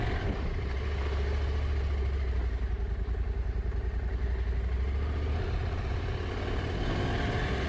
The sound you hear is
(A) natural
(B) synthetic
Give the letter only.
A